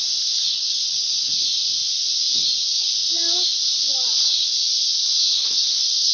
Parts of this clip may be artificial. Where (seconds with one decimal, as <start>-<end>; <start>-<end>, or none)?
0.4-1.4; 5.3-6.1